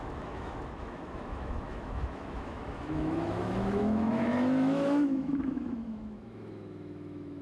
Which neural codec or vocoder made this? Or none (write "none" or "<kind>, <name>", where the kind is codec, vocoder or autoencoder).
autoencoder, DAC-VAE